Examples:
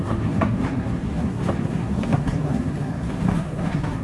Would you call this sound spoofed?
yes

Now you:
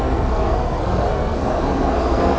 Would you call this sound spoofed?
yes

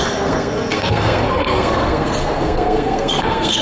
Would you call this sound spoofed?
yes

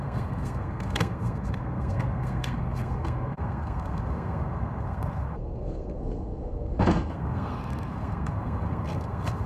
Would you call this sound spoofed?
yes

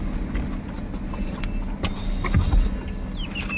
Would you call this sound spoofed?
no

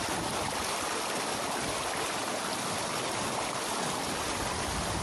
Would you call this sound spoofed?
no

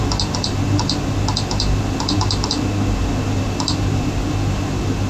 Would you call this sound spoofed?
no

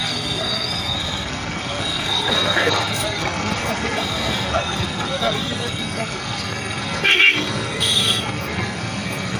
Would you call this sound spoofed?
yes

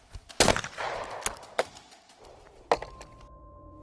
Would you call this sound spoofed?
no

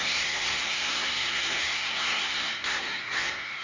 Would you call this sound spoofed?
yes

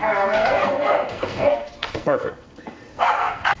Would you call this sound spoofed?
yes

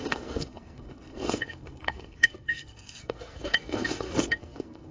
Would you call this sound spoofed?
yes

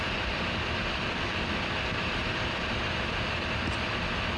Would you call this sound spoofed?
no